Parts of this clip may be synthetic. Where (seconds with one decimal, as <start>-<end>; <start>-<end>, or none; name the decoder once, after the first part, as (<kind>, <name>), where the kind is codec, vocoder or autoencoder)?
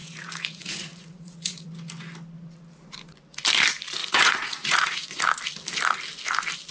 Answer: 0.0-1.7 (vocoder, Vocos); 4.0-5.2